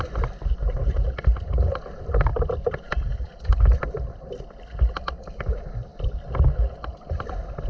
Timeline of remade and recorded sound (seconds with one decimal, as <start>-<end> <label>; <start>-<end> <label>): 0.0-7.7 recorded

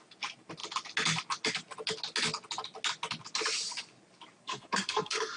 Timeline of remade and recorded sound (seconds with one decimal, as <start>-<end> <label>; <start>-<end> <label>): 0.0-4.4 recorded; 4.4-5.4 remade